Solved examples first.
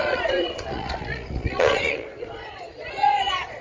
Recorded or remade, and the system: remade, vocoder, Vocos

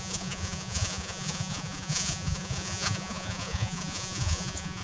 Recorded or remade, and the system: remade, vocoder, Vocos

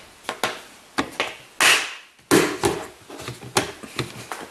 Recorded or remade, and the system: recorded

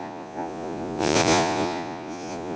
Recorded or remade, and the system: remade, vocoder, Vocos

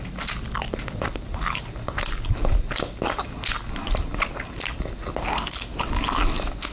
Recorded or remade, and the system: recorded